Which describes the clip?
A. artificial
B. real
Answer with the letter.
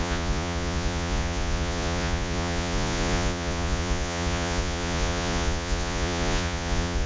A